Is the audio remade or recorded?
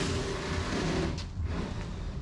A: recorded